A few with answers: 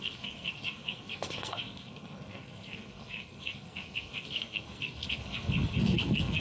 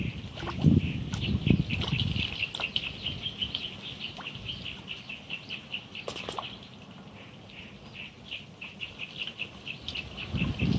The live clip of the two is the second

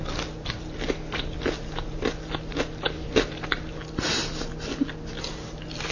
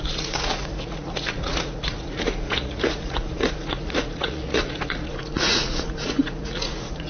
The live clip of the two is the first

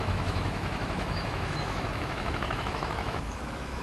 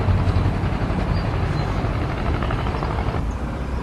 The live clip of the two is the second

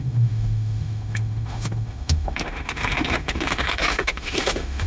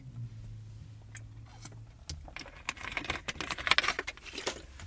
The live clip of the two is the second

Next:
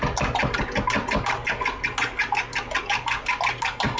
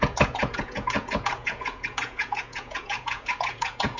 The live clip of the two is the first